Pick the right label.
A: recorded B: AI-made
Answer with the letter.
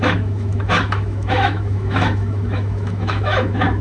B